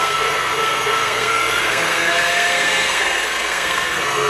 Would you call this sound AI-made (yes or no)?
yes